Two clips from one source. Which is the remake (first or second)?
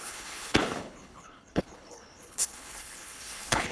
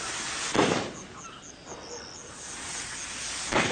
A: first